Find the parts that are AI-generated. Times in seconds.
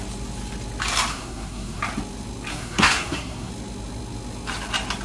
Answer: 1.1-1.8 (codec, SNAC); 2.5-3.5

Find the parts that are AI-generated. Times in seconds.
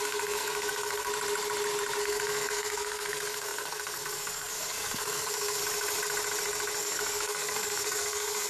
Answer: 0.0-1.1 (codec, SNAC); 2.0-5.6; 6.8-8.5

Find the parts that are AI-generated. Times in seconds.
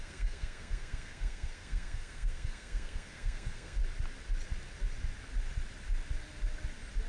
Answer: 0.0-3.8 (codec, SNAC)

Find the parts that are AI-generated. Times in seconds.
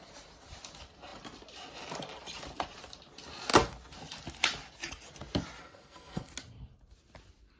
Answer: 5.6-6.3 (codec, SNAC)